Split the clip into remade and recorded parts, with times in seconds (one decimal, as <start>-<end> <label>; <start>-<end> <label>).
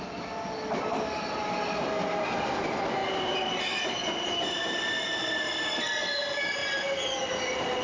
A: 0.0-3.0 recorded; 3.0-5.8 remade; 5.8-7.8 recorded